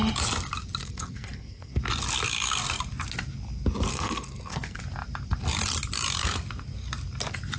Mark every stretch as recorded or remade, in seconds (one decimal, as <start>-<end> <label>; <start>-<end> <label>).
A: 0.0-0.8 recorded; 0.8-1.8 remade; 1.8-3.9 recorded; 3.9-4.8 remade; 4.8-7.6 recorded